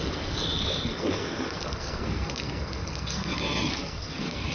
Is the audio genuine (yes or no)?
no